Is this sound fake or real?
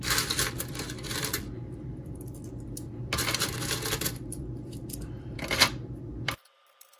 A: fake